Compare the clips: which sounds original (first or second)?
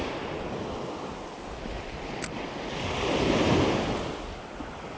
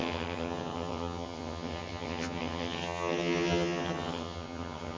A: first